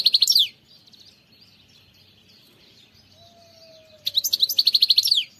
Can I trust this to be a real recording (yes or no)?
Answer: yes